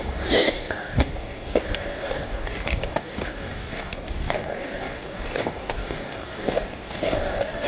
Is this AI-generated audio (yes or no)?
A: yes